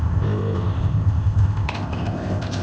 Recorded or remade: remade